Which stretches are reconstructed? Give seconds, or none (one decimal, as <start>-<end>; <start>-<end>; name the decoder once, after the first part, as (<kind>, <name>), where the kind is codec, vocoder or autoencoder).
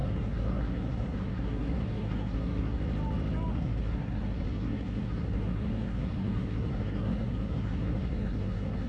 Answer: 0.0-2.8 (codec, SNAC); 3.5-8.9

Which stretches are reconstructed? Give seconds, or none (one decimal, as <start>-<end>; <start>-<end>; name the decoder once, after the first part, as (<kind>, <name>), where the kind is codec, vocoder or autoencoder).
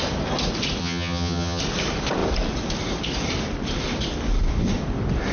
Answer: 0.8-1.6 (vocoder, HiFi-GAN)